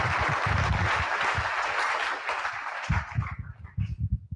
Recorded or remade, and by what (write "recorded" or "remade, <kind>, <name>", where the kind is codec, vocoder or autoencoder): recorded